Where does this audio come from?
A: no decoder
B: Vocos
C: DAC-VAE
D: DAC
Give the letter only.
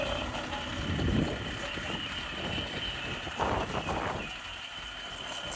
A